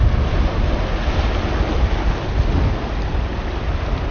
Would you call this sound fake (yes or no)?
no